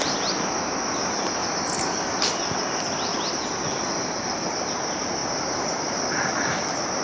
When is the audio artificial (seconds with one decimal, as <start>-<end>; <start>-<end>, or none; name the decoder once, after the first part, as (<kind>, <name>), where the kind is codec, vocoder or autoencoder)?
none